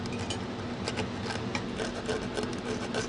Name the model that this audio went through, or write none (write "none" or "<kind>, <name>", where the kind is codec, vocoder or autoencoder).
none